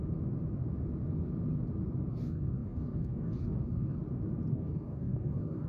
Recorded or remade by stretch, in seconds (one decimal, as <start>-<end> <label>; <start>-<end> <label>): 0.0-2.1 recorded; 2.1-4.0 remade; 4.0-4.5 recorded; 4.5-5.7 remade